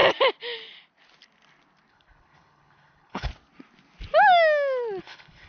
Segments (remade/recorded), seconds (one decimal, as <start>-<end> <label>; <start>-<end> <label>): 0.0-1.9 recorded; 1.9-3.3 remade; 3.3-5.0 recorded; 5.0-5.5 remade